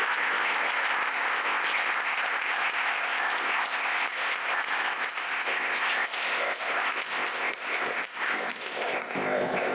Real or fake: fake